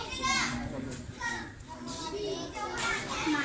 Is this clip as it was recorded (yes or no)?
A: yes